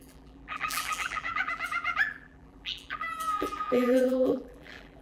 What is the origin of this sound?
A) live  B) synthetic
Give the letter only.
B